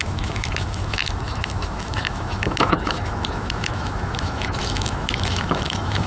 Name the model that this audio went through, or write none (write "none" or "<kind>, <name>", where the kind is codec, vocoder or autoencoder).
autoencoder, DAC-VAE